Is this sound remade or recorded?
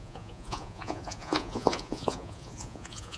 remade